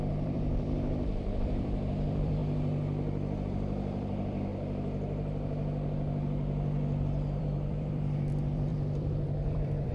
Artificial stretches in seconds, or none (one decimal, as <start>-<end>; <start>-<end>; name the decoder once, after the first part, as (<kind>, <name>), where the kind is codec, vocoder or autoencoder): 0.0-2.4 (vocoder, BigVGAN v2); 3.5-4.5; 7.4-9.9